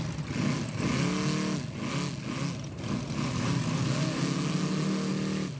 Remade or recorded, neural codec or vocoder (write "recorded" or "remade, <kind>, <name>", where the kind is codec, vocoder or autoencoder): recorded